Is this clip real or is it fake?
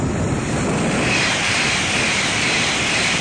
fake